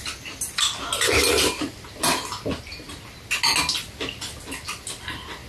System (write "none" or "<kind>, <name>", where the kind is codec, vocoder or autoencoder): none